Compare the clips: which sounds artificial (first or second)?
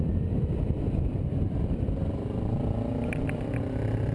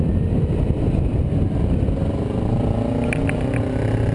first